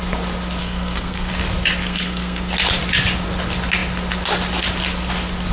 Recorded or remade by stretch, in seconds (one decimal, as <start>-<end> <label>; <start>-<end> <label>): 0.0-0.6 recorded; 0.6-1.3 remade; 1.3-1.8 recorded; 1.8-2.5 remade; 2.5-5.5 recorded